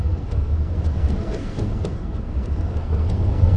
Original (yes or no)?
no